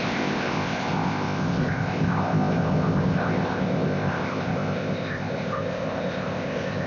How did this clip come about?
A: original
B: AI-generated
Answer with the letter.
B